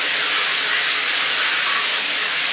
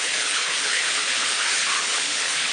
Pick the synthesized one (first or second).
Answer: second